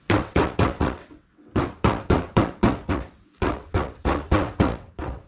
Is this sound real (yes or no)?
no